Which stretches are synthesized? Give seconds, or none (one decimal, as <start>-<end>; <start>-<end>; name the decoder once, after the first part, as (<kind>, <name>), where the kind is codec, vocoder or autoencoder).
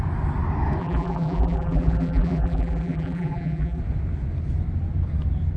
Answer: 0.8-3.8 (vocoder, BigVGAN v2)